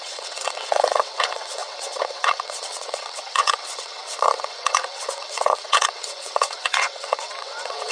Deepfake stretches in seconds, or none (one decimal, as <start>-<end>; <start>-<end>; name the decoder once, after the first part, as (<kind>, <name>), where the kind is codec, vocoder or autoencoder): 0.0-7.9 (vocoder, WaveNeXt)